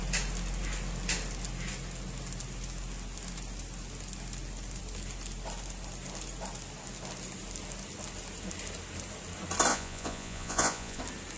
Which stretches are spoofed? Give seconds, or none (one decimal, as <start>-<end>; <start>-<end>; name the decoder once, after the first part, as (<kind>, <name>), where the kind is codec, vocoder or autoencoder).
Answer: 9.7-11.0 (vocoder, Vocos)

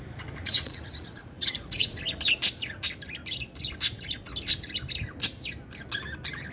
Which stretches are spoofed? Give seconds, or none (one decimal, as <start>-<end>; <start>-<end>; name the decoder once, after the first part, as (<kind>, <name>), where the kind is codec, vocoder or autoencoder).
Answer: 0.4-2.0 (vocoder, Vocos)

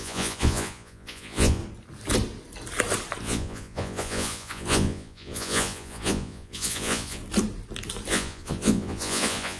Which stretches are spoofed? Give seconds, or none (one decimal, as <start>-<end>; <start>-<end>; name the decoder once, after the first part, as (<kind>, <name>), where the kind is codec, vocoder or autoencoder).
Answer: 0.0-1.6 (vocoder, Vocos); 3.2-7.2; 8.1-9.6

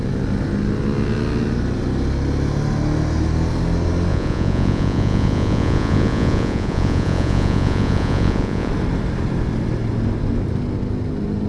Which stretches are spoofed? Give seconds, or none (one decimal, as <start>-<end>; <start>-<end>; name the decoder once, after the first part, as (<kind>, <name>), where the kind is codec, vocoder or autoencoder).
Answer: 4.1-8.7 (vocoder, Vocos)